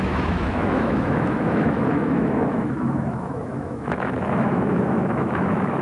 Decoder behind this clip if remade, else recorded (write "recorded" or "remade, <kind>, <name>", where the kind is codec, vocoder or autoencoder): remade, autoencoder, DAC-VAE